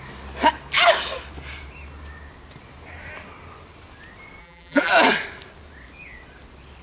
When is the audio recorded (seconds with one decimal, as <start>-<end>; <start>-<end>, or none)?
0.0-4.4; 4.9-6.8